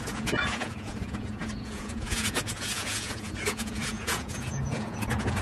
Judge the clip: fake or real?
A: fake